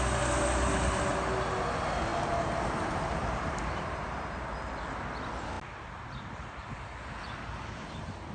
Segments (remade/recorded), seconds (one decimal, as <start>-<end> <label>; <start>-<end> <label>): 0.0-8.3 recorded